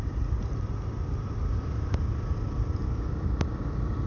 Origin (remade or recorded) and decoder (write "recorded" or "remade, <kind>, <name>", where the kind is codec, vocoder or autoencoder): recorded